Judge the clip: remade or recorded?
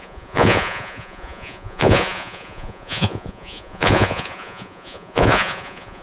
remade